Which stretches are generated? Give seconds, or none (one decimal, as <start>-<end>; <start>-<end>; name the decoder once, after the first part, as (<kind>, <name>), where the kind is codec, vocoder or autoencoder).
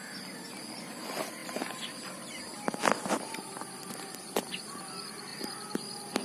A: none